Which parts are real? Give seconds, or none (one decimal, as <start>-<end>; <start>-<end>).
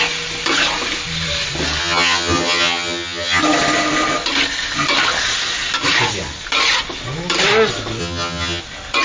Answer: 0.0-1.8; 3.4-8.0; 8.6-9.0